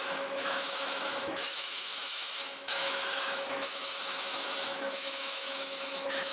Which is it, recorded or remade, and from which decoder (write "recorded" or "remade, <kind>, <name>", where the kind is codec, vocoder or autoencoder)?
remade, autoencoder, DAC-VAE